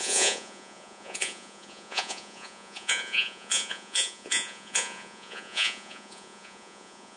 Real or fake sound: fake